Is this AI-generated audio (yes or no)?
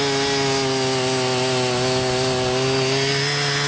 no